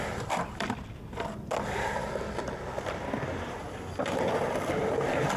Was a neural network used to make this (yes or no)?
no